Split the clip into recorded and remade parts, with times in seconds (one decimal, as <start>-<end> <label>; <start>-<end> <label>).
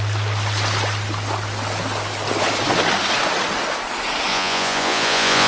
0.0-4.3 recorded; 4.3-5.5 remade